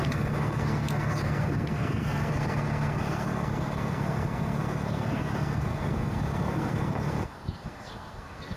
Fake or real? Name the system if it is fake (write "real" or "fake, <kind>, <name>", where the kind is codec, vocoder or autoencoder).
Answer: fake, codec, SNAC